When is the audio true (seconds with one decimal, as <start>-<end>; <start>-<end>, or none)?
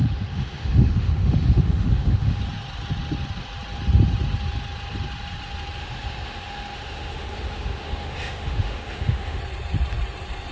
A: 2.4-5.8; 9.4-10.5